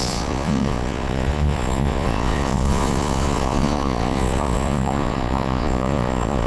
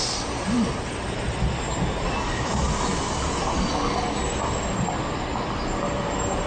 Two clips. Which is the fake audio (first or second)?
first